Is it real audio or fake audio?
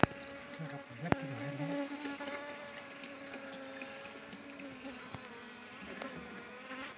real